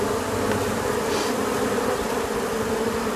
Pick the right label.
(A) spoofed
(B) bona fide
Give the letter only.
B